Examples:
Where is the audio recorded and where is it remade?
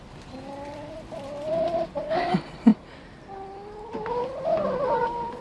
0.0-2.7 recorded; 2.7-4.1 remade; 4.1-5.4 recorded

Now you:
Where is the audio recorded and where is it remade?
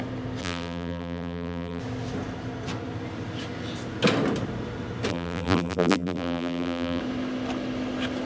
0.0-0.4 recorded; 0.4-1.8 remade; 1.8-5.1 recorded; 5.1-7.0 remade; 7.0-8.3 recorded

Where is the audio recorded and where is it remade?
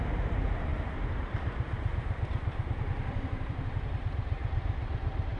0.0-5.4 remade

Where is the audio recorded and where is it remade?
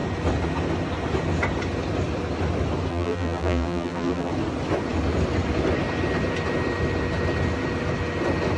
0.0-2.9 recorded; 2.9-4.3 remade; 4.3-8.6 recorded